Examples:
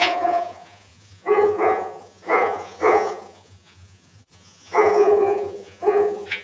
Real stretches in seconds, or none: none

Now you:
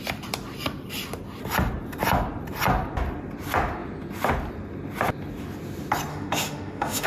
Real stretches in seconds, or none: 0.0-6.1

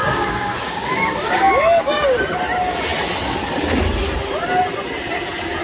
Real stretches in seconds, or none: 2.2-5.6

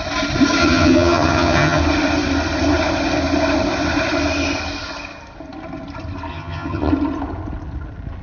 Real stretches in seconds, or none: 0.0-0.6; 1.8-6.3; 6.9-8.2

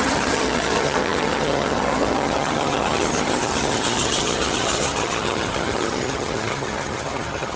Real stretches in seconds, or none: none

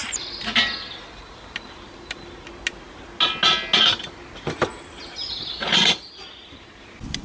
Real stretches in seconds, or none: 0.0-7.2